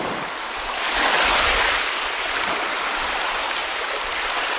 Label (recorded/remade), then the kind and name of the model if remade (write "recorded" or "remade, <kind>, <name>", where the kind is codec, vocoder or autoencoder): remade, vocoder, BigVGAN v2